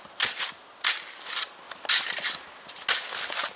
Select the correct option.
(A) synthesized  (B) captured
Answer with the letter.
B